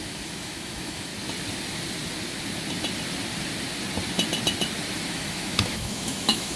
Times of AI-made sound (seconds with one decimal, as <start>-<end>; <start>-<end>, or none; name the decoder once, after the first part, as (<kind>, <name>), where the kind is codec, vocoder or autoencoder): 0.0-1.1 (autoencoder, DAC-VAE); 5.1-6.6